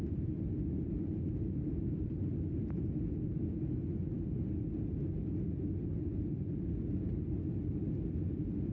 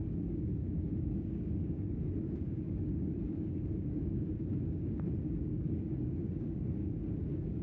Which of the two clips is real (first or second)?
first